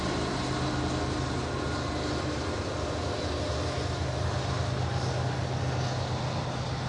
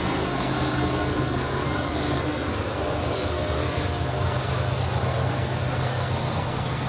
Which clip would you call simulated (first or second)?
second